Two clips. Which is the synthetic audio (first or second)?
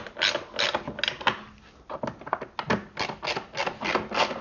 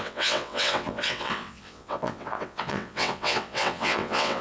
second